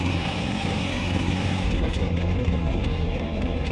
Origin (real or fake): fake